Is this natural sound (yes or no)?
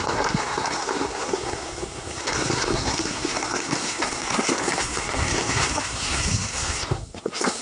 no